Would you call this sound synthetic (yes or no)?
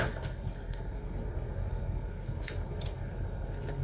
yes